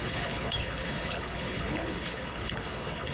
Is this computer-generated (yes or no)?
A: yes